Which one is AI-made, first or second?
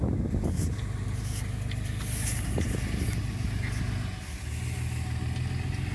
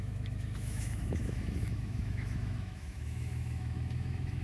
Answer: second